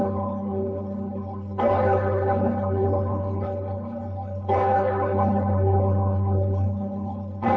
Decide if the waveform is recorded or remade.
remade